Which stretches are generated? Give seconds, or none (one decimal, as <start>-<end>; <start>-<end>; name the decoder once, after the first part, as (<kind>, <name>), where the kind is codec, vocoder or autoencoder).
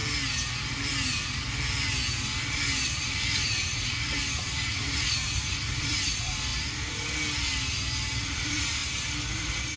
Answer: 3.0-6.5 (vocoder, Vocos); 8.2-8.8; 9.3-9.8